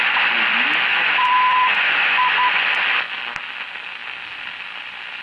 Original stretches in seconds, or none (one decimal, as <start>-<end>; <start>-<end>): 0.0-0.9; 2.8-5.2